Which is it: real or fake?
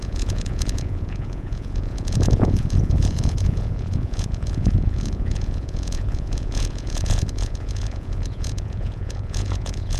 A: fake